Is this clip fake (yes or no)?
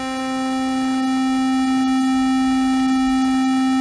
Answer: no